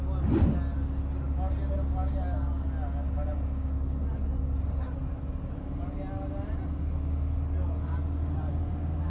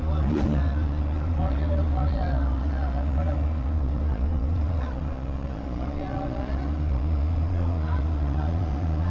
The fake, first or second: second